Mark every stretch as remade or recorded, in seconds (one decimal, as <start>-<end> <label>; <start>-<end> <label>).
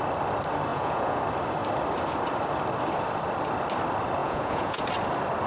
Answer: 0.0-0.7 recorded; 0.7-1.2 remade; 1.2-4.2 recorded; 4.2-4.8 remade; 4.8-5.5 recorded